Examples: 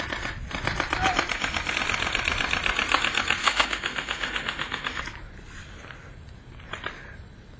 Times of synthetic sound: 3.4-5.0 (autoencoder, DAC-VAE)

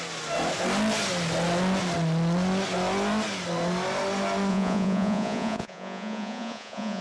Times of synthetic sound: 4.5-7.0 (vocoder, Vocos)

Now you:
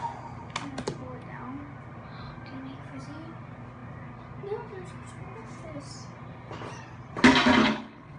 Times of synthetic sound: 7.6-8.2 (codec, HILCodec)

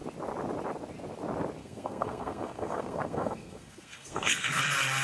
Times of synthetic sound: 1.6-4.6 (codec, SNAC)

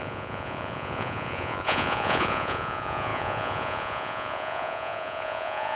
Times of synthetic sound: 0.0-5.7 (vocoder, Vocos)